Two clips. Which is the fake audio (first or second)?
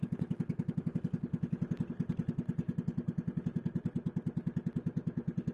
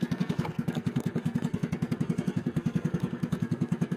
second